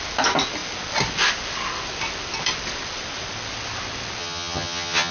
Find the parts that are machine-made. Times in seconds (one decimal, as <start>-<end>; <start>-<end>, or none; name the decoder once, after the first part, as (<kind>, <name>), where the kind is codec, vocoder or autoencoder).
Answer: 4.2-5.1 (vocoder, HiFi-GAN)